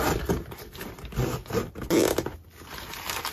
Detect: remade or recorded recorded